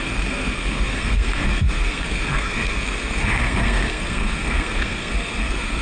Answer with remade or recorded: remade